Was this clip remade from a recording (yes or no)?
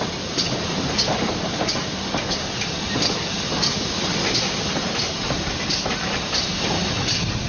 no